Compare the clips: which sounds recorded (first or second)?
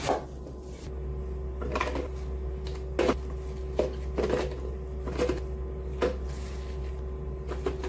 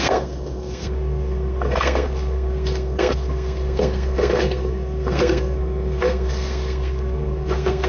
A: first